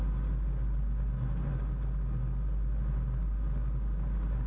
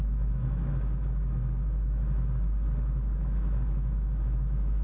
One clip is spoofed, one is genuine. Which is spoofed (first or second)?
second